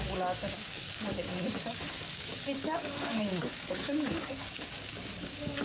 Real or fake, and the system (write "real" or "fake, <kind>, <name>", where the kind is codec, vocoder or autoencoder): fake, codec, DAC